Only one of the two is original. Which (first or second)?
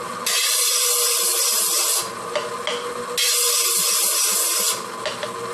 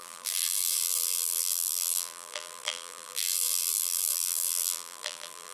first